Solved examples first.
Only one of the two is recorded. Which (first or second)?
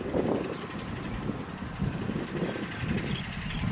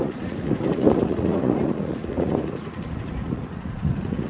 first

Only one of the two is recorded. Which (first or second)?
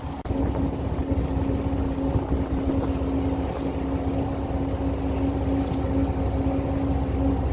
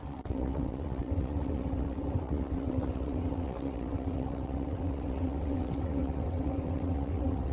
first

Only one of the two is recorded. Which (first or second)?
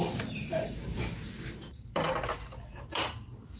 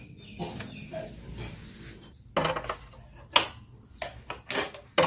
second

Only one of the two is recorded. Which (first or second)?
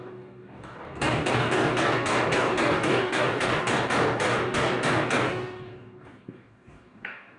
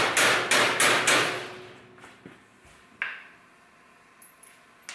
second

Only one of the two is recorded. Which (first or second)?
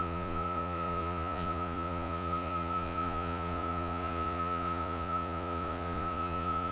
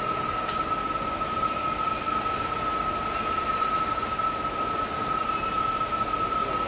second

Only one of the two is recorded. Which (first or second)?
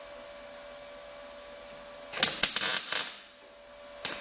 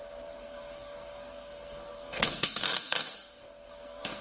first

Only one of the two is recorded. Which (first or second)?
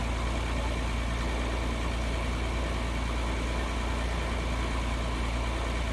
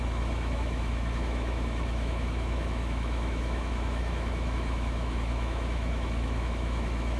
first